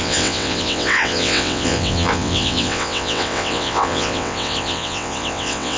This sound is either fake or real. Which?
fake